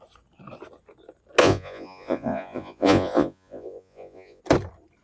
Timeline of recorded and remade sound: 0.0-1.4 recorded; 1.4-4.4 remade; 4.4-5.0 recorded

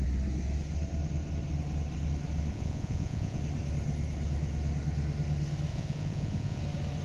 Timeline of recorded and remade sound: 0.0-2.5 recorded; 2.5-3.4 remade; 3.4-5.7 recorded; 5.7-6.6 remade; 6.6-7.0 recorded